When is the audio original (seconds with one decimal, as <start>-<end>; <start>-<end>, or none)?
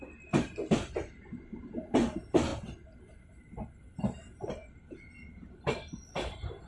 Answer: 4.6-5.4